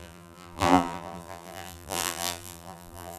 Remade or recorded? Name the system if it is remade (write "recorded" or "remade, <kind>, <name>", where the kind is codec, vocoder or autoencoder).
remade, vocoder, BigVGAN v2